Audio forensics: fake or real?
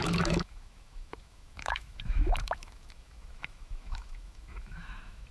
fake